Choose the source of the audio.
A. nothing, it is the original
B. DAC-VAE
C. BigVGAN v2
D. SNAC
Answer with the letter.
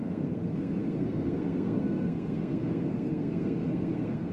D